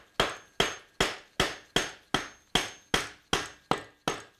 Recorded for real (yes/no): yes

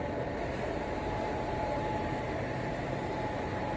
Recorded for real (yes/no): no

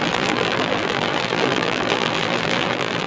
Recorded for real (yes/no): no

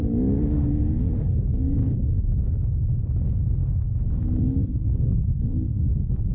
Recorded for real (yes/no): yes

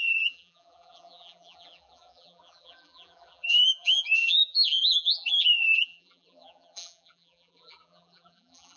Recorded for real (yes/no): no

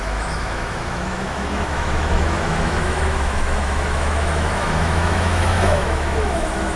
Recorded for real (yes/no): no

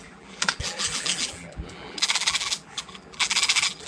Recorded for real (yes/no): no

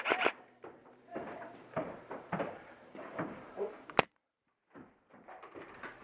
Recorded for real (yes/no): no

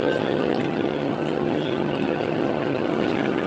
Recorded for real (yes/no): no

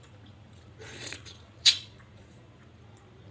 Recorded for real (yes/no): no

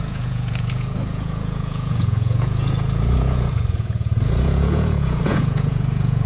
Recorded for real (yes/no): no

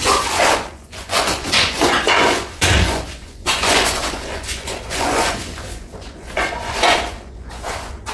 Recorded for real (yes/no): no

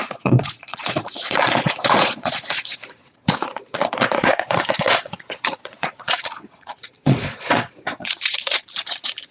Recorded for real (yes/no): no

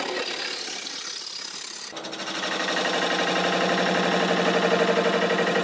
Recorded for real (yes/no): yes